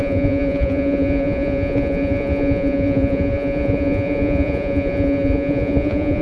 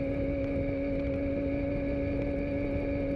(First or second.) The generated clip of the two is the first